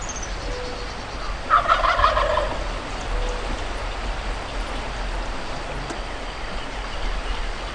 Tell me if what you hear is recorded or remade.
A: recorded